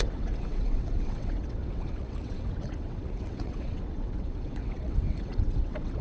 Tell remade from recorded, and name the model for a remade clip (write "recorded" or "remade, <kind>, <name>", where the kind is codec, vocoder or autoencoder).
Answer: remade, vocoder, WaveNeXt